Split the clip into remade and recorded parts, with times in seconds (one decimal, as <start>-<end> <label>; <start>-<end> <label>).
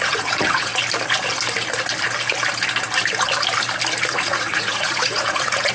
0.0-0.7 remade; 0.7-4.1 recorded; 4.1-5.7 remade